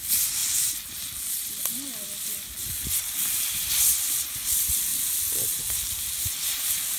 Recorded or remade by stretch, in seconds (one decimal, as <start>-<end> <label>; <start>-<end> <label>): 0.0-0.4 remade; 0.4-1.1 recorded; 1.1-4.9 remade; 4.9-7.0 recorded